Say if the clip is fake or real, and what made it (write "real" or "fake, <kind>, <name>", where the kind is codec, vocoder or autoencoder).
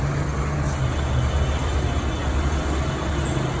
real